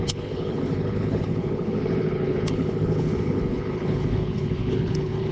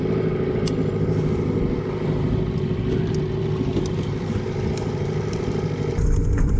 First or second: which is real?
second